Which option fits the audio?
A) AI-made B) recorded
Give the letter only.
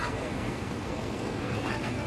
A